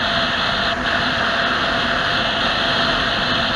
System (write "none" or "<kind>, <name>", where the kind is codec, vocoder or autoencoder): none